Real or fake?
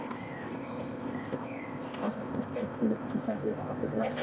fake